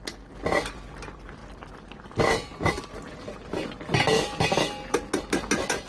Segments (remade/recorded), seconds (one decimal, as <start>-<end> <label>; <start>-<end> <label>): 0.0-5.9 recorded